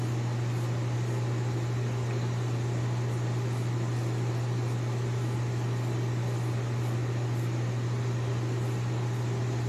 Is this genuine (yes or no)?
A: yes